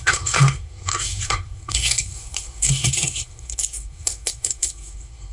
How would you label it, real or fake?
fake